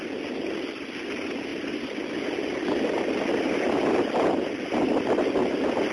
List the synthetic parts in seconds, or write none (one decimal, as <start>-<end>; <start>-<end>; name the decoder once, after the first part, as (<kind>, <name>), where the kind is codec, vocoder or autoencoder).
none